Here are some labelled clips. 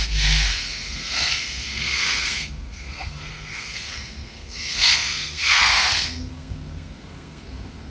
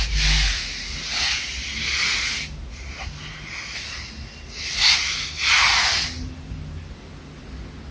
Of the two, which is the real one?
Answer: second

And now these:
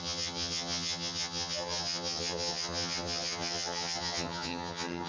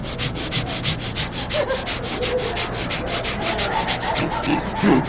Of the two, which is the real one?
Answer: second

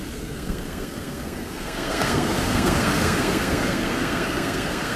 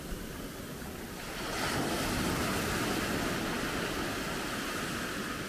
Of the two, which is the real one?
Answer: second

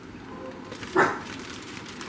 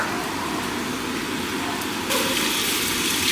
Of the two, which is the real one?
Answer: second